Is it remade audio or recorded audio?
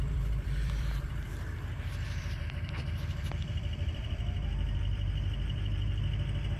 remade